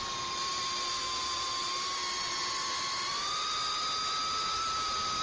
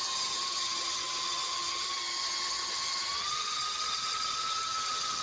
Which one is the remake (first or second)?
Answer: second